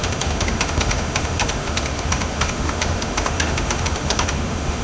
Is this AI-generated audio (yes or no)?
yes